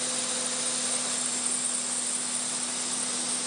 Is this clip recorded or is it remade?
recorded